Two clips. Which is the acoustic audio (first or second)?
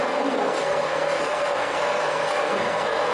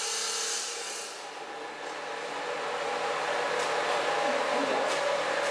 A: second